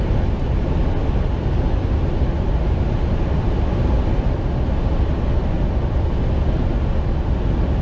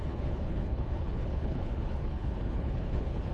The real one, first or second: first